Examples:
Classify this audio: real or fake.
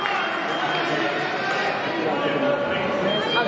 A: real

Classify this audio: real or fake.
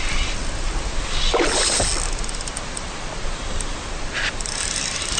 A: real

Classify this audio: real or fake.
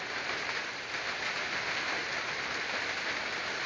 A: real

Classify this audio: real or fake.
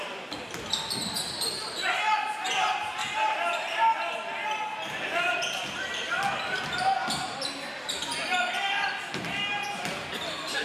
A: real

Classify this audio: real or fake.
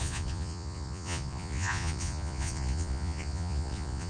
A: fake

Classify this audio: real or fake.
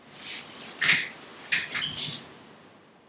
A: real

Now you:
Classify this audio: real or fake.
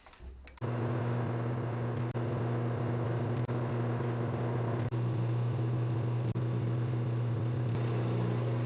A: real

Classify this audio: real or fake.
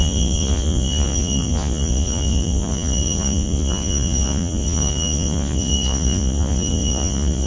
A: fake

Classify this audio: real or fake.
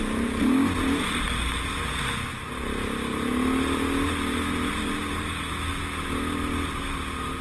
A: real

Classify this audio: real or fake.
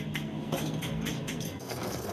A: fake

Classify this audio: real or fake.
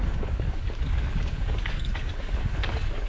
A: fake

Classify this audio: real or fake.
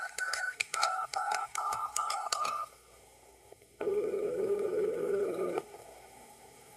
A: fake